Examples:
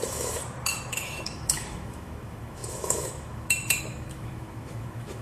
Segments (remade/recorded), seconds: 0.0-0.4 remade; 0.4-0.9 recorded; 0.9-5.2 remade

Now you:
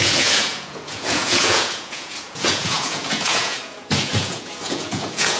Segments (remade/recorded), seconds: 0.0-5.4 remade

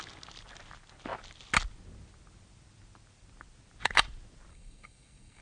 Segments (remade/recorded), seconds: 0.0-4.5 recorded; 4.5-5.4 remade

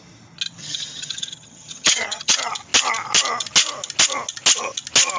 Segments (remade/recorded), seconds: 0.0-0.6 recorded; 0.6-2.3 remade; 2.3-5.2 recorded

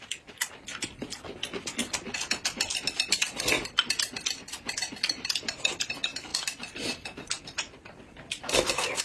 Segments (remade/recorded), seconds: 0.0-9.0 recorded